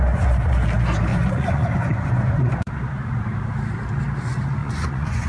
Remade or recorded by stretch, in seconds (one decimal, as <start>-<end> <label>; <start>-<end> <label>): 0.0-1.1 recorded; 1.1-2.7 remade; 2.7-4.6 recorded; 4.6-5.3 remade